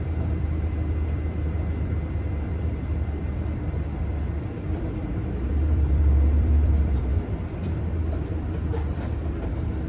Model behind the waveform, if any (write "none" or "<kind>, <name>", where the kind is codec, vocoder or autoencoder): vocoder, BigVGAN v2